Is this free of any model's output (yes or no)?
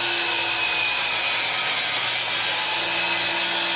yes